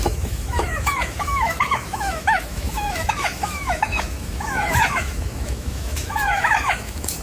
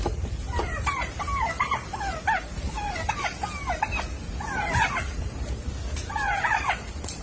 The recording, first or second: second